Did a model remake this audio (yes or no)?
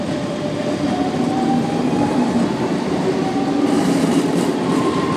yes